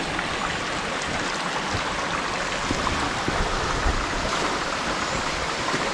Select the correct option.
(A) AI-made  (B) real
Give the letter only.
B